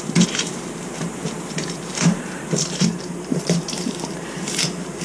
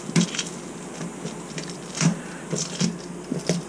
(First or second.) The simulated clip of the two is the first